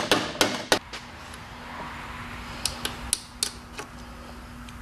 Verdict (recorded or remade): recorded